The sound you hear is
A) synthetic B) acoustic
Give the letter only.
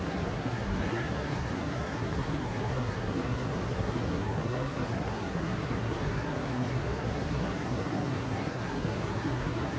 A